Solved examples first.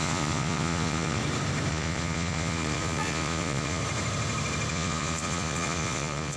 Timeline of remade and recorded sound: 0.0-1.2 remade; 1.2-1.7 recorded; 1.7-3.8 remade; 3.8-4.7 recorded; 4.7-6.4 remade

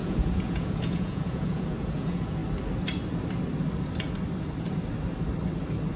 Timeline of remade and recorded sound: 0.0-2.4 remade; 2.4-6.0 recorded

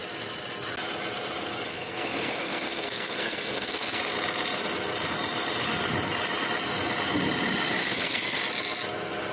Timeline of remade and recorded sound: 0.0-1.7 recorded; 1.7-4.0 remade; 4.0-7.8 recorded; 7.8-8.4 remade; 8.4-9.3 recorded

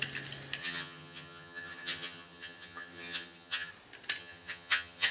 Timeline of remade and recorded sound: 0.0-0.6 recorded; 0.6-3.7 remade; 3.7-4.2 recorded; 4.2-5.1 remade

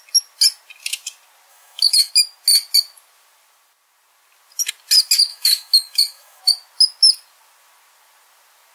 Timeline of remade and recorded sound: 0.0-1.5 recorded; 1.5-2.1 remade; 2.1-5.3 recorded; 5.3-6.4 remade; 6.4-8.7 recorded

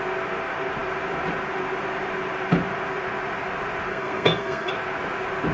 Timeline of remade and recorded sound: 0.0-3.9 recorded; 3.9-4.7 remade; 4.7-5.5 recorded

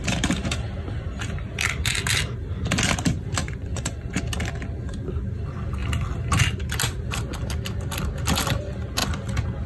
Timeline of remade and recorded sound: 0.0-3.4 recorded; 3.4-4.2 remade; 4.2-9.7 recorded